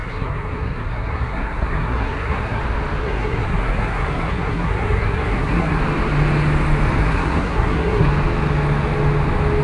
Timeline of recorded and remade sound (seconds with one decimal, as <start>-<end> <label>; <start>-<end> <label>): 0.0-2.6 remade; 2.6-3.0 recorded; 3.0-5.8 remade; 5.8-7.0 recorded; 7.0-8.1 remade; 8.1-9.6 recorded